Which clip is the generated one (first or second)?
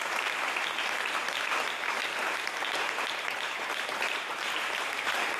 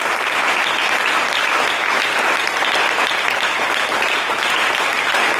first